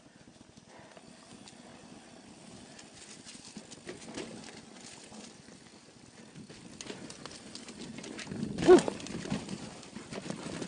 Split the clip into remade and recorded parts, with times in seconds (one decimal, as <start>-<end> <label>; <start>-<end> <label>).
0.0-10.7 recorded